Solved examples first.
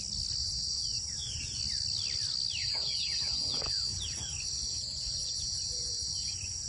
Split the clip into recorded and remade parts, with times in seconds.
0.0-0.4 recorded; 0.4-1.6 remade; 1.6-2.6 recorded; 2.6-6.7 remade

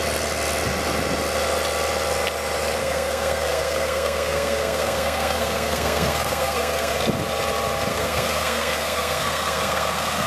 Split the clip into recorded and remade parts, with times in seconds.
0.0-2.8 recorded; 2.8-6.9 remade; 6.9-7.9 recorded; 7.9-10.3 remade

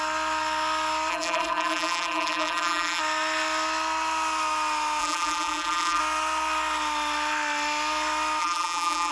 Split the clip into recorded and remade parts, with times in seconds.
0.0-1.1 recorded; 1.1-3.0 remade; 3.0-5.0 recorded; 5.0-6.0 remade; 6.0-8.4 recorded; 8.4-9.1 remade